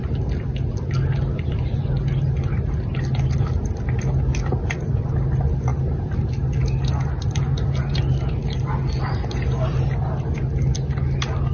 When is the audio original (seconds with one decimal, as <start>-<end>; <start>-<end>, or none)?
0.0-11.5